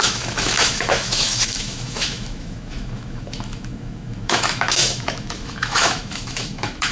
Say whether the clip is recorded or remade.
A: remade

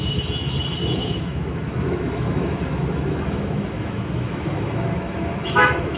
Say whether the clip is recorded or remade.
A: remade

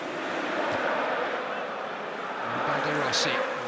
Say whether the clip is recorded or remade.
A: recorded